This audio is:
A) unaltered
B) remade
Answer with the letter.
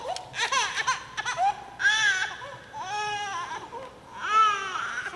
A